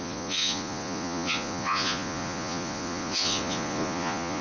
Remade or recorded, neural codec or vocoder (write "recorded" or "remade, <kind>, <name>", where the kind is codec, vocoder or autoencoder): remade, vocoder, Vocos